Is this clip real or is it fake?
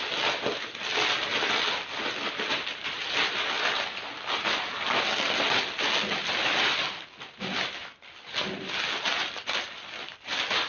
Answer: real